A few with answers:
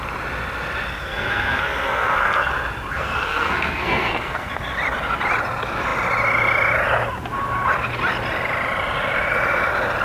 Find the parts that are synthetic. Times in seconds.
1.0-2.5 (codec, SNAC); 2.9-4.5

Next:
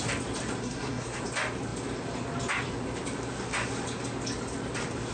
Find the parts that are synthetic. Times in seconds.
0.6-1.2 (codec, SNAC)

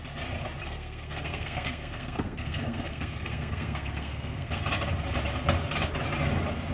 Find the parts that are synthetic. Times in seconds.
0.6-4.6 (codec, SNAC)

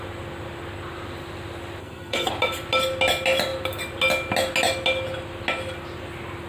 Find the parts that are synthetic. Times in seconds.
1.8-2.3 (codec, SNAC)

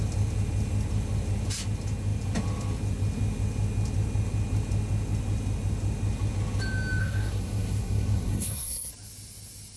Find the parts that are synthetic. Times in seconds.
7.0-8.9 (codec, SNAC)

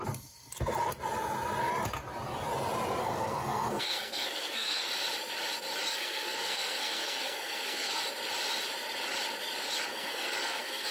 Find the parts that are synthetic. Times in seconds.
3.0-4.9 (codec, SNAC); 5.9-8.0; 9.9-10.9